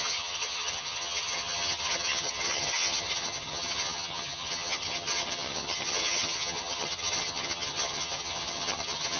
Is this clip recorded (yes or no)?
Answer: no